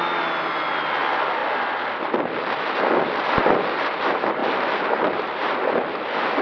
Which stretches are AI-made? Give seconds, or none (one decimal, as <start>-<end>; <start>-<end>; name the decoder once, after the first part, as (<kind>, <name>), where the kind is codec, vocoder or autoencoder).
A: 4.4-5.5 (vocoder, BigVGAN v2)